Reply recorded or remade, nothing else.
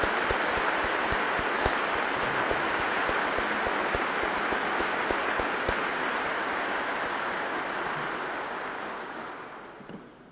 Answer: recorded